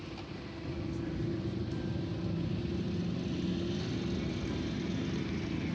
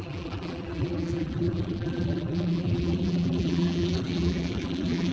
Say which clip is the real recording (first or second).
first